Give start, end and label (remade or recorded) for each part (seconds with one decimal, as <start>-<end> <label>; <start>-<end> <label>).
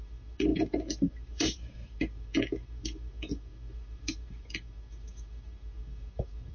0.0-6.5 remade